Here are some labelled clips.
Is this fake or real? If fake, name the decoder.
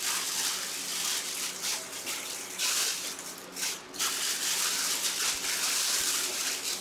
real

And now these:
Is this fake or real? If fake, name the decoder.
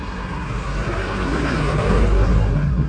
fake, codec, SNAC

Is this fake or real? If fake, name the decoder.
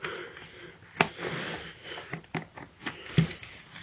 real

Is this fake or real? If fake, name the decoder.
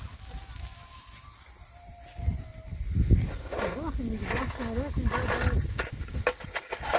real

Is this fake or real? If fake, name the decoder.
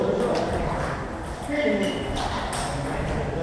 real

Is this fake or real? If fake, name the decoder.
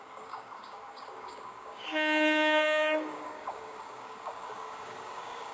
fake, codec, DAC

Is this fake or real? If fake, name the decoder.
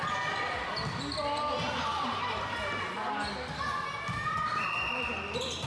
real